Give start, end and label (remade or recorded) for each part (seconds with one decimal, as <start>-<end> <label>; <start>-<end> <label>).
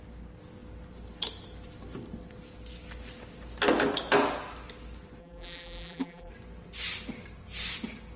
0.0-5.2 recorded; 5.2-6.3 remade; 6.3-8.2 recorded